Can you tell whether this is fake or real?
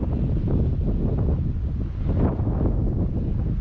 real